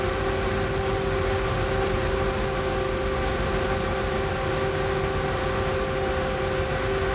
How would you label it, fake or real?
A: real